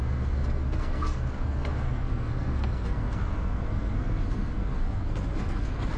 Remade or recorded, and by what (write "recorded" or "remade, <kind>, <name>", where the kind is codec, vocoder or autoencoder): remade, codec, SNAC